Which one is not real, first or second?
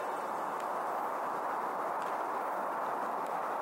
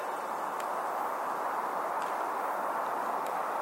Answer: second